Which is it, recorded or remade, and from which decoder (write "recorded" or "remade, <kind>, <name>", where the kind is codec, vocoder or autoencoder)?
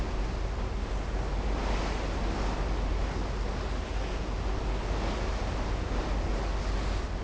recorded